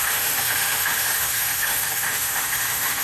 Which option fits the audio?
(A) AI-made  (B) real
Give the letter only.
A